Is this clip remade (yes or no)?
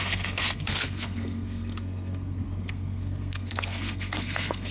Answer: yes